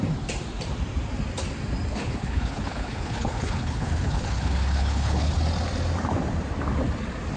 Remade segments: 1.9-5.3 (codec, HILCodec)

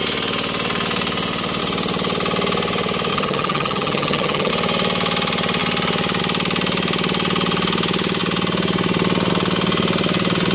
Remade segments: 3.1-4.5 (vocoder, HiFi-GAN)

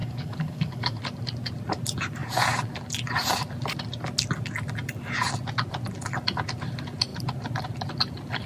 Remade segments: 0.0-1.0 (codec, DAC)

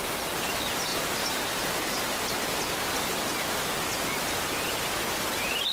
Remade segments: 0.9-3.8 (vocoder, BigVGAN v2)

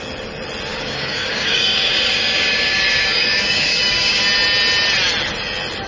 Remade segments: 0.7-4.2 (codec, DAC)

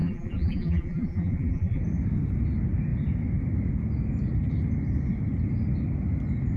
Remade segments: 0.0-1.8 (vocoder, BigVGAN v2)

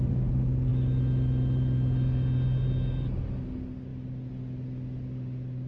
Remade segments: none

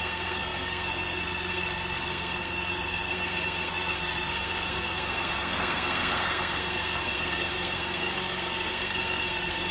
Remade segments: 0.0-9.7 (codec, SNAC)